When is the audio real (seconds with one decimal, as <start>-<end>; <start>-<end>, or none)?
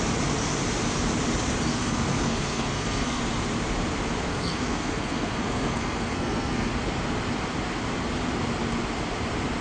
0.0-1.7; 3.2-4.3; 6.7-9.6